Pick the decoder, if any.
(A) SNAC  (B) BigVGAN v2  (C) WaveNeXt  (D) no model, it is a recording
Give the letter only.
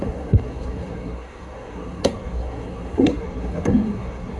A